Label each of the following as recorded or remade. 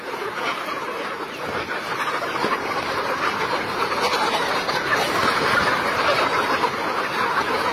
recorded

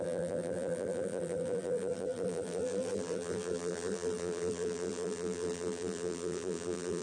remade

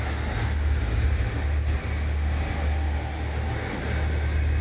recorded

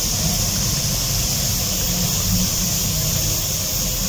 recorded